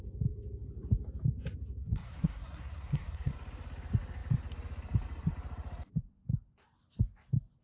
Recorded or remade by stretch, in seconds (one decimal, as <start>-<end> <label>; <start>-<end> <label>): 0.0-1.8 recorded; 1.8-3.3 remade; 3.3-7.6 recorded